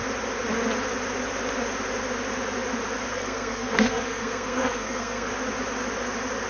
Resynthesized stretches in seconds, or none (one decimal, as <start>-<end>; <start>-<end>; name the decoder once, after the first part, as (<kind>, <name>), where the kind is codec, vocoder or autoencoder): 3.1-5.3 (codec, SNAC)